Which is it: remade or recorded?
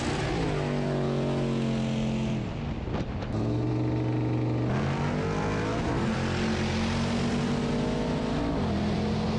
recorded